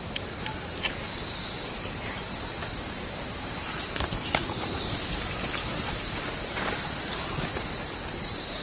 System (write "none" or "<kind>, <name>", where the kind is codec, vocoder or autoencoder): vocoder, BigVGAN v2